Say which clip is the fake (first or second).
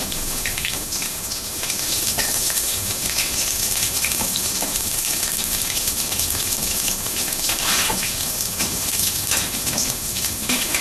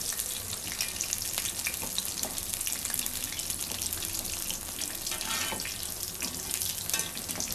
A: first